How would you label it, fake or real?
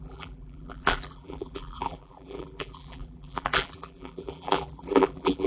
fake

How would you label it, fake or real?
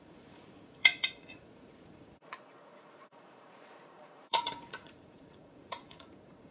fake